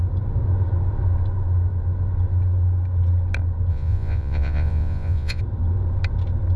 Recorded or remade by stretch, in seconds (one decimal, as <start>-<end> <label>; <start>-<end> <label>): 0.0-3.7 recorded; 3.7-5.4 remade; 5.4-6.6 recorded